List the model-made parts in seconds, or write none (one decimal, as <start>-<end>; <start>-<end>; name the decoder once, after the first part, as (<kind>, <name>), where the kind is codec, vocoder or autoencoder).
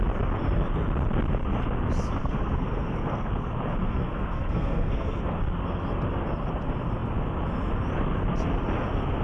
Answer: 2.2-3.3 (codec, SNAC); 3.8-5.2